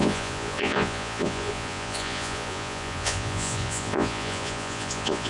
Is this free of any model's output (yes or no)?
no